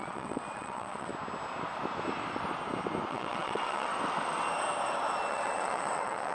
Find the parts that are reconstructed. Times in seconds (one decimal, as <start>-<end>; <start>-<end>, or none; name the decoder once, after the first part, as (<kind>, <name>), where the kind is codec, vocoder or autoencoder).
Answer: 0.0-1.1 (vocoder, WaveNeXt); 3.1-3.9; 5.3-6.3